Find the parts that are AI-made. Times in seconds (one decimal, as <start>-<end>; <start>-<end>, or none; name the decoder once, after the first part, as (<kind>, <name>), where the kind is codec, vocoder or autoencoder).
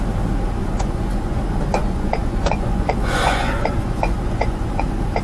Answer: 0.6-1.4 (vocoder, Vocos); 1.8-4.8